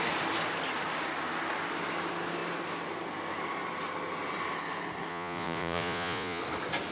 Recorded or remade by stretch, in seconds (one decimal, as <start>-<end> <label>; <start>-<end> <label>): 0.0-5.1 recorded; 5.1-6.4 remade; 6.4-6.9 recorded